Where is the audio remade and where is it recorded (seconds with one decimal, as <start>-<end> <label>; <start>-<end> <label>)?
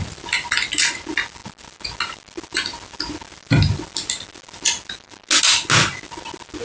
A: 0.0-6.6 recorded